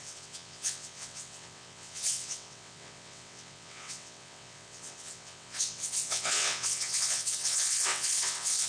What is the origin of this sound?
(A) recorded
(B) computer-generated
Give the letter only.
B